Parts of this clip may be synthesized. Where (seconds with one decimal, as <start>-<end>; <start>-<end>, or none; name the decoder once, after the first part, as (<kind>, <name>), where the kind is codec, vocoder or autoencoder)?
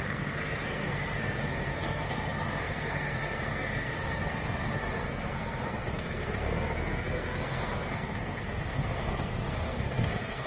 0.0-10.5 (codec, SNAC)